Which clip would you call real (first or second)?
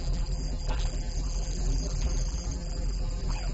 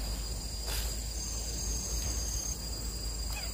second